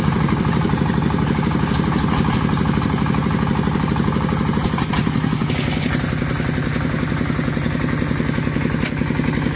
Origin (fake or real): real